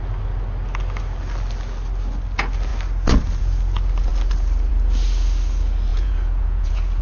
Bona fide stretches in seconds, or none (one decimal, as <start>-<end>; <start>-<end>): 0.0-5.9